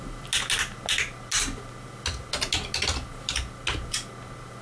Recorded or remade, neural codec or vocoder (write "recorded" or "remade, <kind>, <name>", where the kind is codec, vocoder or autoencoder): recorded